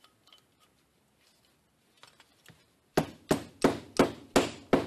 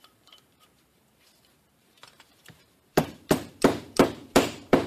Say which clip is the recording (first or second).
first